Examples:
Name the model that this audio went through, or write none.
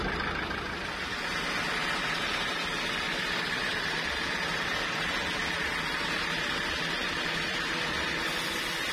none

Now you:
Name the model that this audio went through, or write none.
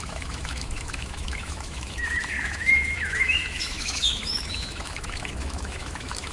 autoencoder, DAC-VAE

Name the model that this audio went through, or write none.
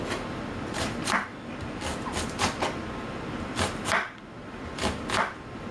none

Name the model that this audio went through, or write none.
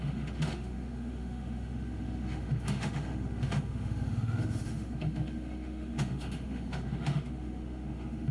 autoencoder, DAC-VAE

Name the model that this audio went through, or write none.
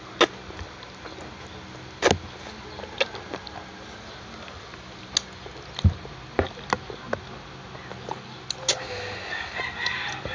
none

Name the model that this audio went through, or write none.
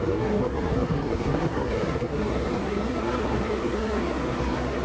codec, SNAC